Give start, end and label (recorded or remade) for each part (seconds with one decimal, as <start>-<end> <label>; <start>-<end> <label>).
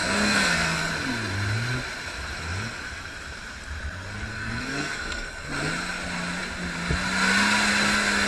0.0-0.9 remade; 0.9-4.3 recorded; 4.3-5.5 remade; 5.5-8.3 recorded